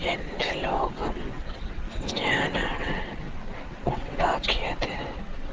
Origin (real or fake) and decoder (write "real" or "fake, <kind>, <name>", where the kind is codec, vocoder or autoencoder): fake, vocoder, WaveNeXt